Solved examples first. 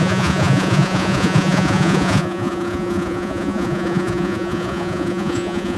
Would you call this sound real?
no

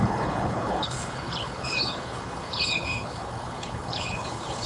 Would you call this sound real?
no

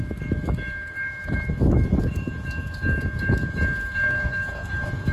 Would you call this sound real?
no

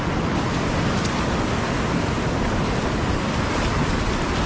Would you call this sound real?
yes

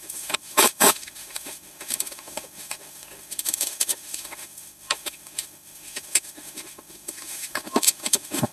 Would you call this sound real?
no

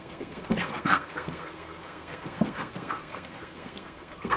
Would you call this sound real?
no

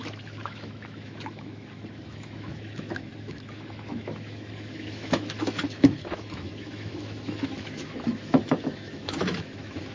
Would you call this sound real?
no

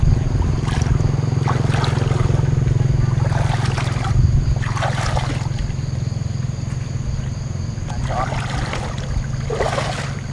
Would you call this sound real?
yes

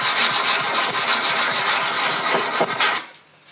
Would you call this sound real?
yes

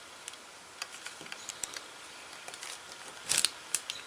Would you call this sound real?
yes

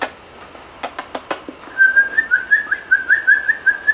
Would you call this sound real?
yes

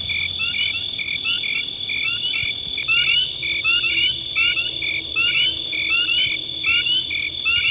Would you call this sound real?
yes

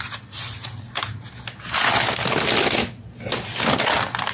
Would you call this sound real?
yes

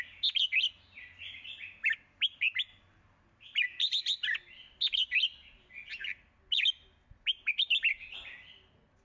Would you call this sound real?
yes